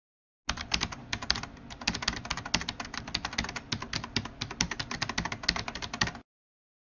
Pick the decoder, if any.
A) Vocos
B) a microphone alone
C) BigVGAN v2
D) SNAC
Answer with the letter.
B